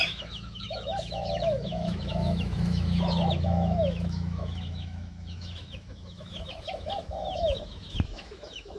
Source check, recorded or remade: remade